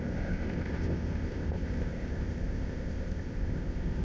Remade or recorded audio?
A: remade